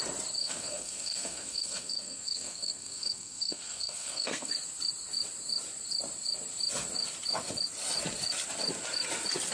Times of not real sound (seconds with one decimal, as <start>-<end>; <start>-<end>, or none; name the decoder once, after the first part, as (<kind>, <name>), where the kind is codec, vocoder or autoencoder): 0.4-4.5 (codec, SNAC)